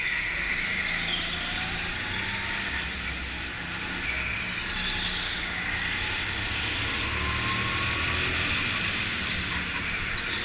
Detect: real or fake real